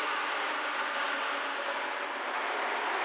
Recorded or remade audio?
recorded